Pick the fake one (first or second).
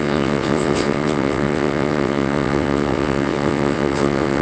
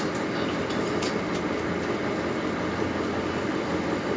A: first